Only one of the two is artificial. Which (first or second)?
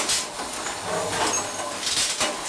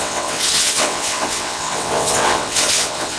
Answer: second